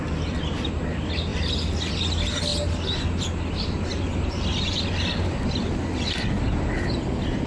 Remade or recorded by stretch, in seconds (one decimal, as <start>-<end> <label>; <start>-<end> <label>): 0.0-7.5 recorded